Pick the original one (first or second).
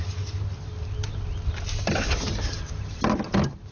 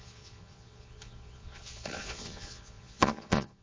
first